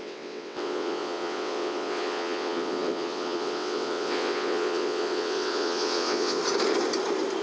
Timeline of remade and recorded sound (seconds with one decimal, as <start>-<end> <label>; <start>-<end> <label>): 0.0-6.4 remade; 6.4-7.4 recorded